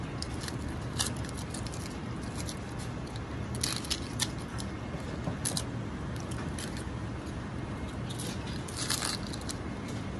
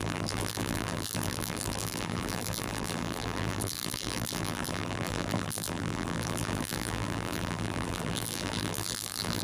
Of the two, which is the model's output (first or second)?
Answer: second